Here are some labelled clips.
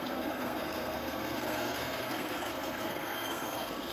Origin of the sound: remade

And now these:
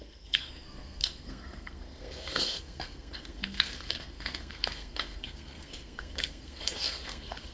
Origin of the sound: remade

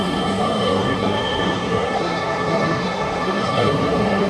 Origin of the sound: remade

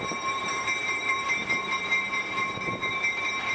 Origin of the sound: remade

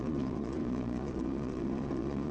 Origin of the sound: remade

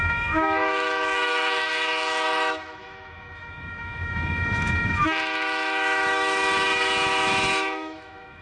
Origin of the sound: remade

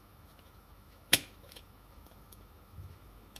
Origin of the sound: remade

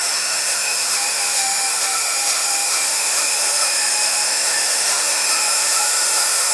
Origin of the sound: remade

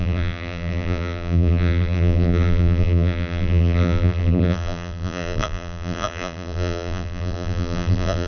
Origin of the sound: remade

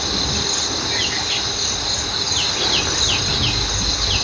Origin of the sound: recorded